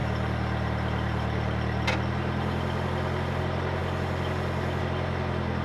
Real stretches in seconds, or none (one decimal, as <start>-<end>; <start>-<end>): 0.0-5.6